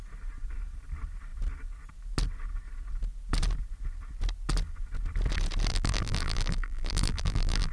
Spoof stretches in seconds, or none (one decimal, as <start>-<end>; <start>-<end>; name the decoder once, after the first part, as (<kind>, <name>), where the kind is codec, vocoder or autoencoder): 5.7-7.7 (vocoder, BigVGAN v2)